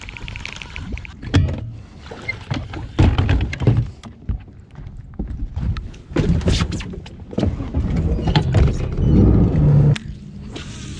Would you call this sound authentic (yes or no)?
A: yes